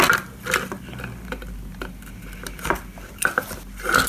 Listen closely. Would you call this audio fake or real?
real